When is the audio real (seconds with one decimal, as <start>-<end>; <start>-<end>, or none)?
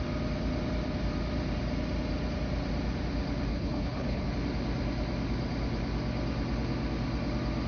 0.0-3.5; 4.3-7.7